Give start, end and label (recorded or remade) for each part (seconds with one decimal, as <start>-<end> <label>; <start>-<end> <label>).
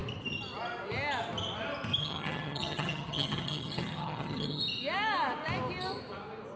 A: 0.0-2.0 recorded; 2.0-4.6 remade; 4.6-6.6 recorded